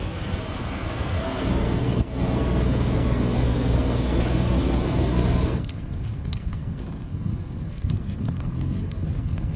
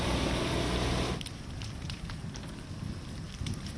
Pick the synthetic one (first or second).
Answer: first